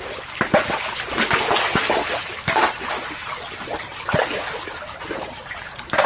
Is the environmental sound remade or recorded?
recorded